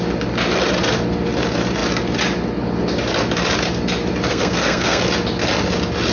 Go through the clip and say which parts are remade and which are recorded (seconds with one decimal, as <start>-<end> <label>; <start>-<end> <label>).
0.0-4.3 recorded; 4.3-5.0 remade; 5.0-6.1 recorded